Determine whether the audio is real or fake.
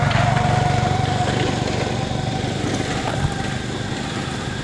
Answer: real